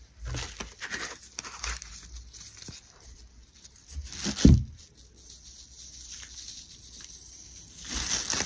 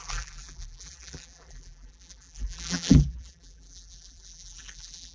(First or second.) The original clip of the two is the first